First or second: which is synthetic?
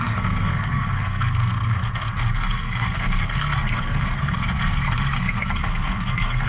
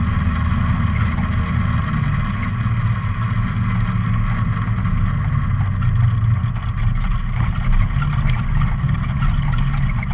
first